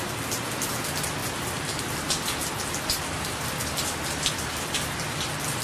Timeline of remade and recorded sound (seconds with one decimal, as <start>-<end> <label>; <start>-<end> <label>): 0.0-5.6 recorded